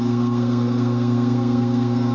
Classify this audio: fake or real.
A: fake